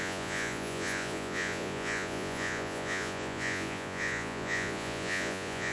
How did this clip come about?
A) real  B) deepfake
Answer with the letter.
B